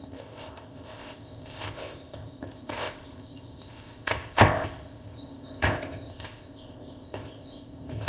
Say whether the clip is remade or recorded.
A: remade